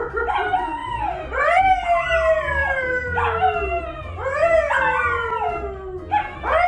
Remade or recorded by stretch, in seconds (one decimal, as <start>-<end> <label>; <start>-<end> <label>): 0.0-6.7 recorded